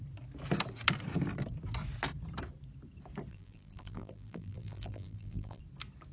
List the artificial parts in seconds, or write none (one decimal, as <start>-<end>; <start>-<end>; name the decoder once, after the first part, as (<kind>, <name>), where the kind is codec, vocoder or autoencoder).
3.3-5.6 (vocoder, BigVGAN v2)